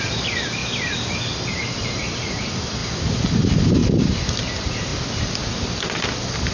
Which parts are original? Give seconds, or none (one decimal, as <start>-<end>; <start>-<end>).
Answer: 0.6-1.5; 4.9-6.5